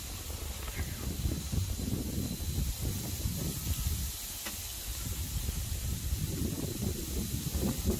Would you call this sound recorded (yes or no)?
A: yes